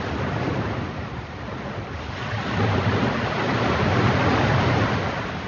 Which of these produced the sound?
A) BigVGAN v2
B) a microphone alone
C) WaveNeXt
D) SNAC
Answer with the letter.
B